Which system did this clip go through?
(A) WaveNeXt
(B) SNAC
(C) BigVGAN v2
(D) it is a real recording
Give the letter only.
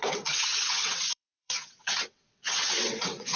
A